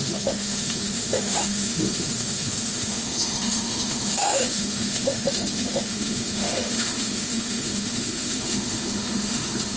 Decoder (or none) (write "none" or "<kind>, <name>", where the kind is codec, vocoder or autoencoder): autoencoder, DAC-VAE